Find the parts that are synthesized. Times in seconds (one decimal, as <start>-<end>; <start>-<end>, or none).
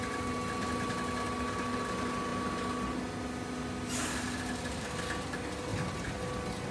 none